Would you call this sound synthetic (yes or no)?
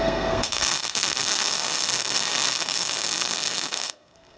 yes